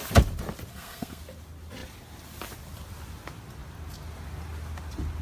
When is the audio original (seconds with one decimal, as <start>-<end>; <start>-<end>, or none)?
0.0-0.7; 1.2-5.2